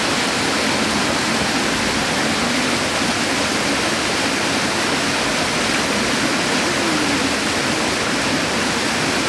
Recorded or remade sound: recorded